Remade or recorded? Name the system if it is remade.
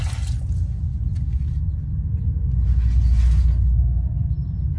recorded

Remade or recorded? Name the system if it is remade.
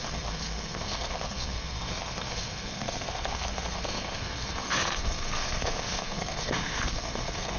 remade, codec, SNAC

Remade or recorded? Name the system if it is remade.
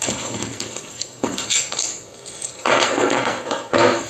remade, codec, SNAC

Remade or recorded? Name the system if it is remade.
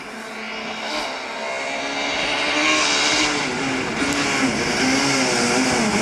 recorded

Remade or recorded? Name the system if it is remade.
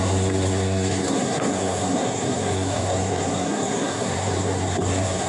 remade, codec, SNAC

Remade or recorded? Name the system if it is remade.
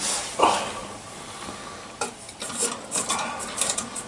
recorded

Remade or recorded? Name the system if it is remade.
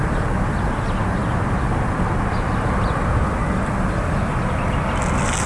recorded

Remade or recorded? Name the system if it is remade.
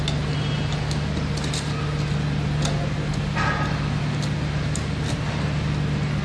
recorded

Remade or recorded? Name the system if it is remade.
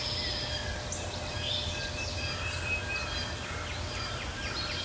recorded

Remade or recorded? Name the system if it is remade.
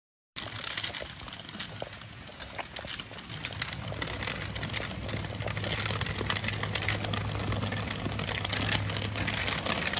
recorded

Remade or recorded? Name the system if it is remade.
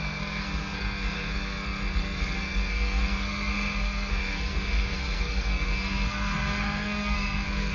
remade, codec, SNAC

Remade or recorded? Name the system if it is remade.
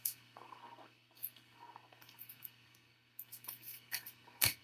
remade, codec, SNAC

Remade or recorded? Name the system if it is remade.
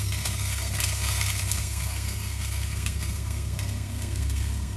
remade, codec, SNAC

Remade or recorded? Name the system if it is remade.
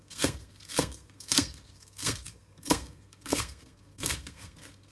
remade, codec, SNAC